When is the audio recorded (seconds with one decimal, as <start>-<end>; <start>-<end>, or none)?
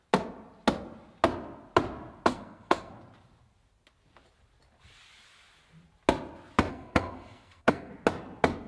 0.0-2.3; 2.9-6.7; 7.9-8.7